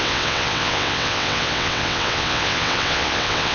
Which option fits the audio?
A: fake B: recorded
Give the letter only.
A